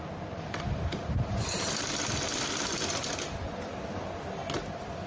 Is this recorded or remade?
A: recorded